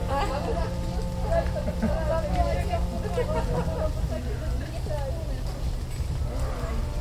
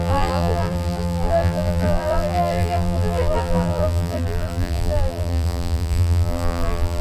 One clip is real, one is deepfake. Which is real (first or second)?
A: first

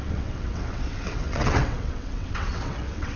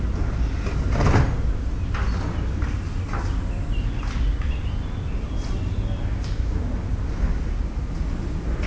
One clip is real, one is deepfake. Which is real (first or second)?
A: second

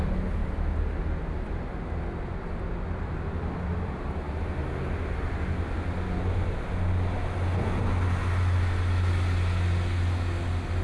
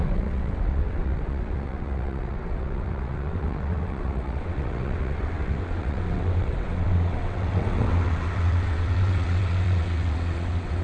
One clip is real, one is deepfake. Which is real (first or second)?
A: first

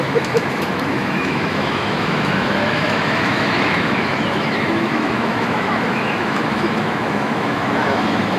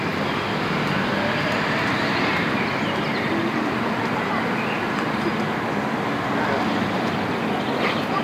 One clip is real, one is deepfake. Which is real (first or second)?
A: second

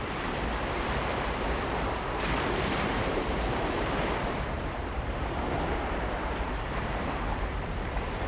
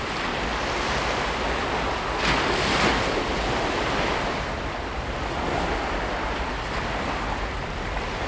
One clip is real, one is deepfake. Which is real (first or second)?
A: second